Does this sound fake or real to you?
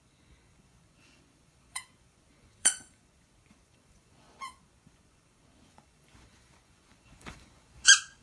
fake